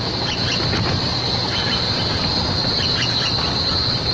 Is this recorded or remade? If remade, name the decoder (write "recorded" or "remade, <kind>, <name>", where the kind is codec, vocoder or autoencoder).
recorded